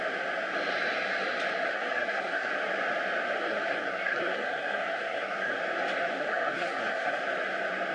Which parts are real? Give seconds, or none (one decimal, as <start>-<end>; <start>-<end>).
0.0-1.7; 2.5-3.4; 5.6-6.1; 7.2-7.9